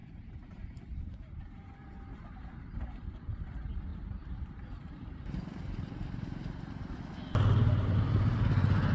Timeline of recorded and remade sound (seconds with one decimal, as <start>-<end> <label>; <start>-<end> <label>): 0.0-3.5 remade; 3.5-3.9 recorded; 3.9-7.0 remade; 7.0-8.9 recorded